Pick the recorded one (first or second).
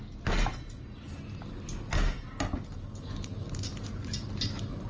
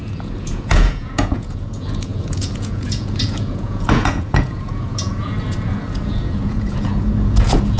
first